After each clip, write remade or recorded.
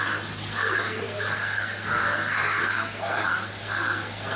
remade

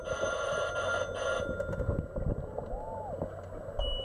recorded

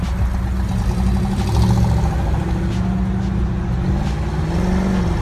recorded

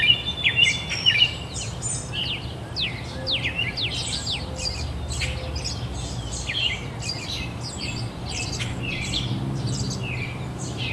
recorded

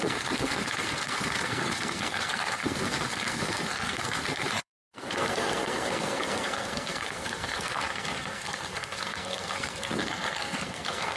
remade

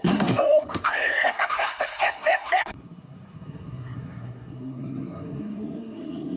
remade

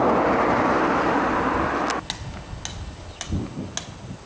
recorded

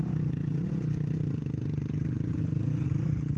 recorded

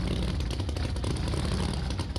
recorded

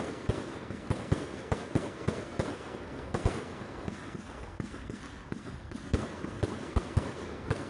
remade